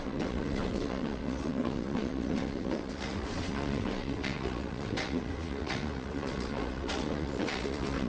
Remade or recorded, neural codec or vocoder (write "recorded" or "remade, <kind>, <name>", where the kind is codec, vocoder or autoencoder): remade, vocoder, WaveNeXt